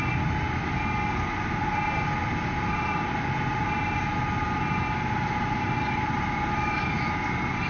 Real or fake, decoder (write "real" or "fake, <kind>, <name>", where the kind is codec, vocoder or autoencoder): real